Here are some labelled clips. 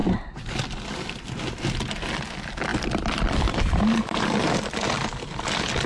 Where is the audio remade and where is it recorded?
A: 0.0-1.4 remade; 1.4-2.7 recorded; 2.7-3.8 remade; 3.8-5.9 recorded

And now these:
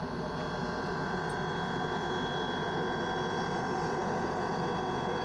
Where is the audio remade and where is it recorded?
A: 0.0-5.2 recorded

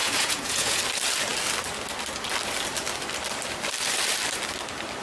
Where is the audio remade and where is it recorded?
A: 0.0-0.8 remade; 0.8-5.0 recorded